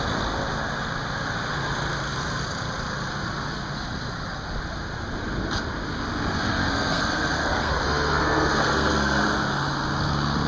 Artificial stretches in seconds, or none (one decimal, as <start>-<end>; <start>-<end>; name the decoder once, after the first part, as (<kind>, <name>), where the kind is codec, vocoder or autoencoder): 6.5-9.2 (codec, SNAC)

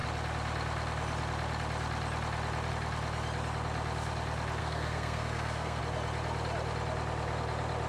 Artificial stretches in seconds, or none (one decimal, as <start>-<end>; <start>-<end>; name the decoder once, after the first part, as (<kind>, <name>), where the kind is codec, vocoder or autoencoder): 4.6-5.8 (codec, SNAC)

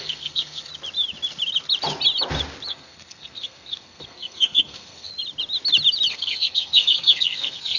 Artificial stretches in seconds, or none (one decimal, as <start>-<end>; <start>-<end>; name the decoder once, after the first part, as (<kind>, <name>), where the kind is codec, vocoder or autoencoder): 0.0-0.7 (codec, SNAC); 2.7-5.1; 6.1-7.8

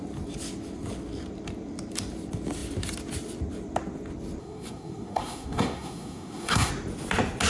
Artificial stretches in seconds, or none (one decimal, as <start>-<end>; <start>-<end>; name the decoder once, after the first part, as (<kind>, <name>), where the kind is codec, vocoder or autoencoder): 4.4-6.7 (codec, SNAC)

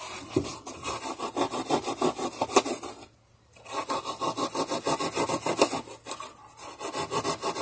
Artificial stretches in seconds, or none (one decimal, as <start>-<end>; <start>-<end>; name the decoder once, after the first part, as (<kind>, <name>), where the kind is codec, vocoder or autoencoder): none

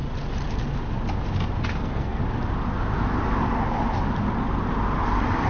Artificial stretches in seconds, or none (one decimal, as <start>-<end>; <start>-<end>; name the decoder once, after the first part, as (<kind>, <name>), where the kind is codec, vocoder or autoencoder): 1.8-2.2 (codec, SNAC)

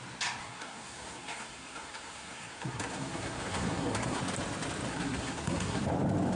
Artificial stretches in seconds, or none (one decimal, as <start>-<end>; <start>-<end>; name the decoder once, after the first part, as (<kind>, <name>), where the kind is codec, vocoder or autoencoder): 0.4-4.2 (codec, SNAC); 4.9-5.8

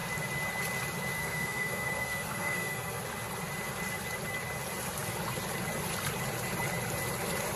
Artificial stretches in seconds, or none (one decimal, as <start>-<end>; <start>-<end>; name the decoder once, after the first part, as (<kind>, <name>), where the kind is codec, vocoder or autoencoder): 1.2-3.0 (codec, SNAC)